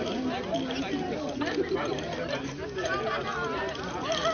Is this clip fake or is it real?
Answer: real